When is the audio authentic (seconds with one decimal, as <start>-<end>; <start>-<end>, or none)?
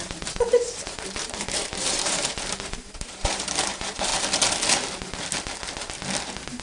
4.1-6.6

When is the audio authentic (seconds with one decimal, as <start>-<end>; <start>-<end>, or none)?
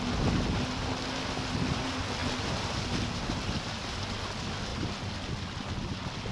0.0-6.3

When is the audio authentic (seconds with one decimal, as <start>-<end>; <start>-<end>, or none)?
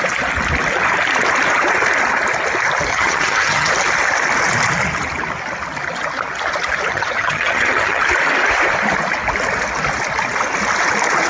0.0-2.9; 3.7-6.9; 8.0-11.3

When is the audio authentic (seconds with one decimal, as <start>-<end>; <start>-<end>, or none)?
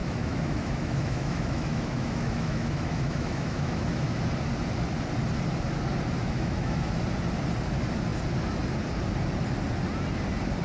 4.2-6.2; 7.0-10.6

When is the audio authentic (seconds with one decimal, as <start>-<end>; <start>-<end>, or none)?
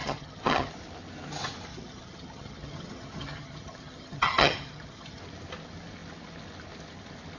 0.7-1.7; 5.2-7.4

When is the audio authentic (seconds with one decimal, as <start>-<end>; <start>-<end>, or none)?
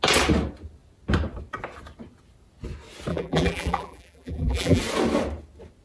0.0-3.1; 4.8-5.8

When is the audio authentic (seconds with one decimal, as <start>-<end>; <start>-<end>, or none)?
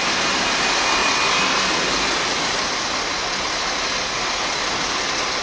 0.0-5.4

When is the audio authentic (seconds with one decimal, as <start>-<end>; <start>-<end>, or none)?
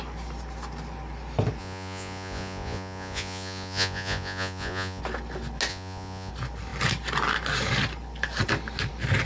0.0-1.6; 5.0-5.7; 6.3-9.3